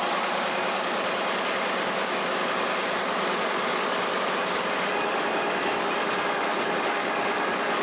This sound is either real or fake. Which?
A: fake